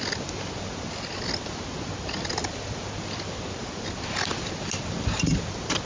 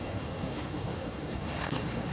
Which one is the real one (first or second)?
first